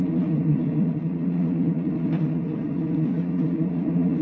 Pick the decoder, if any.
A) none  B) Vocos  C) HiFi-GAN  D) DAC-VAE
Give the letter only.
B